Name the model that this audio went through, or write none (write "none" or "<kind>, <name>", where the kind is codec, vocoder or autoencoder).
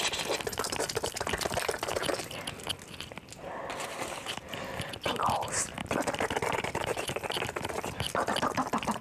none